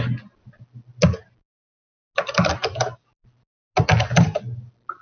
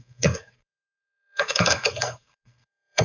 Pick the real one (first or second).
first